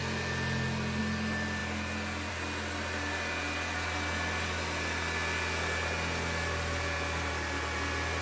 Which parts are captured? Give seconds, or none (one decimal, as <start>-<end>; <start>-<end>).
0.0-8.2